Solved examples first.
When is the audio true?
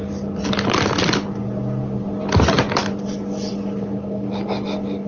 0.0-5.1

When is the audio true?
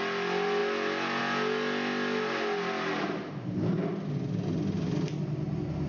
0.0-5.9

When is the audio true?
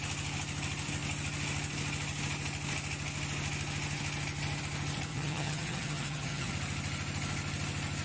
0.0-5.1; 6.5-8.0